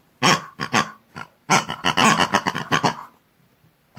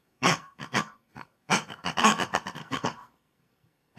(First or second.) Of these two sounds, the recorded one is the first